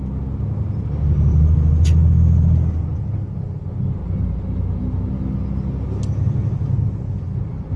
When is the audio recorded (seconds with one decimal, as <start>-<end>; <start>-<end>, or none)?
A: 0.0-7.8